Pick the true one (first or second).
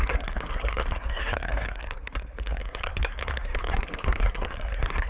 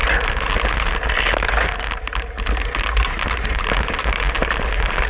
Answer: second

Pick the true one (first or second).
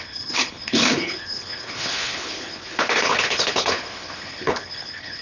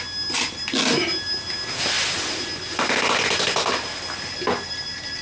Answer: second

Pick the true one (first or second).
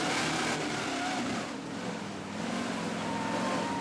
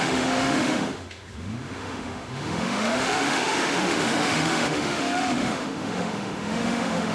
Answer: first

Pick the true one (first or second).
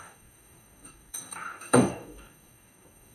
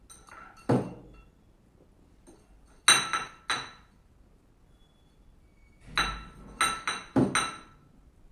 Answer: second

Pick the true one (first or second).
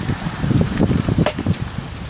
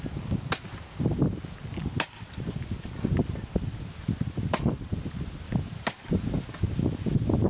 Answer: second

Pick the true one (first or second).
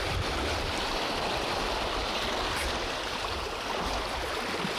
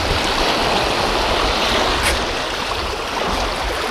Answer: second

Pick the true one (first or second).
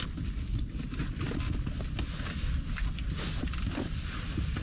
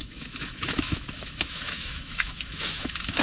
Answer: first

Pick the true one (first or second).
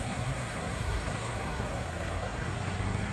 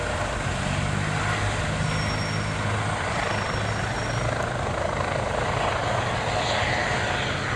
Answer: second